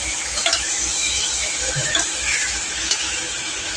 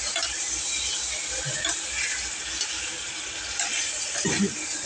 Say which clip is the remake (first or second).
first